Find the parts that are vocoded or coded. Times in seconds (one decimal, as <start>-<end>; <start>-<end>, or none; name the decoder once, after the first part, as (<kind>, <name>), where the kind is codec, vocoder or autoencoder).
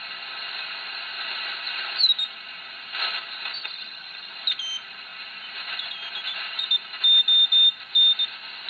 3.6-4.3 (vocoder, HiFi-GAN)